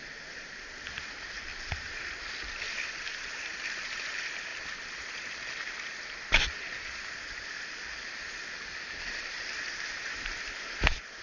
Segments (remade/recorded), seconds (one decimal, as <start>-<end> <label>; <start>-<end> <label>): 0.0-11.2 recorded